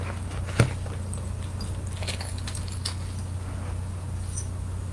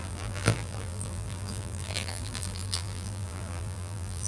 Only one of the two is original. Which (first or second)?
first